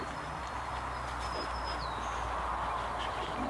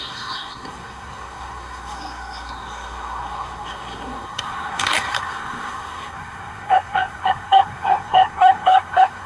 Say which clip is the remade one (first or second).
second